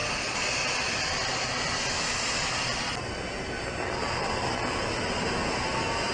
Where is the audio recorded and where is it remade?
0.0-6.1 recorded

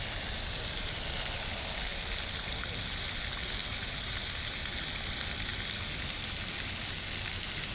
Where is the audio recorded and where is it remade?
0.0-7.7 recorded